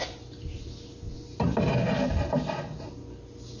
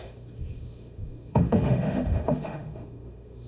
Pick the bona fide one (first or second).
first